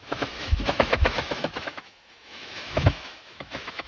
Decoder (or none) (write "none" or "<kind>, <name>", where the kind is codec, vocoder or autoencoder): autoencoder, DAC-VAE